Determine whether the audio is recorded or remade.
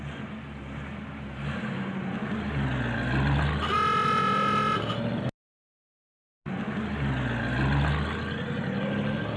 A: recorded